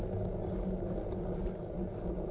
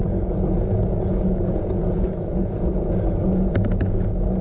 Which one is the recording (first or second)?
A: first